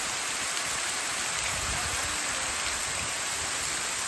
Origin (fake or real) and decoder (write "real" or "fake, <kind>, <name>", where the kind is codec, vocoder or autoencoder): real